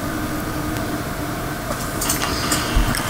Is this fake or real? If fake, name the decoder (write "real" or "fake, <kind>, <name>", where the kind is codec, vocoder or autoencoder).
real